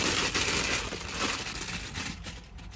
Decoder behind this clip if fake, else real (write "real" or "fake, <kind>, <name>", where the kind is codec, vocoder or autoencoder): real